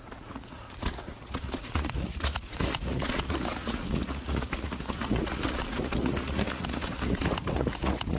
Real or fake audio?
fake